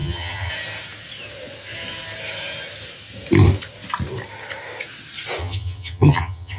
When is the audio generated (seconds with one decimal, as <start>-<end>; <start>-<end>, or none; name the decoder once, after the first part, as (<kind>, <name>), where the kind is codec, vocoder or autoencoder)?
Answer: 0.0-0.5 (vocoder, HiFi-GAN); 5.4-6.6

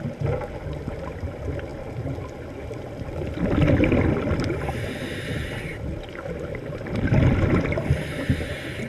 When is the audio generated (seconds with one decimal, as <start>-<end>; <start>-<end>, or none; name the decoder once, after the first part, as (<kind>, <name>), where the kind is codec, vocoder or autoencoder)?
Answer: none